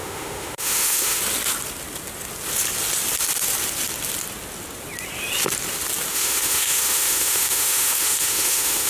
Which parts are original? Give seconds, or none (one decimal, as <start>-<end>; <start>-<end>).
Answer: 1.2-6.1